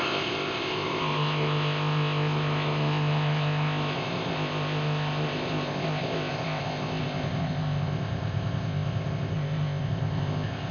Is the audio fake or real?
fake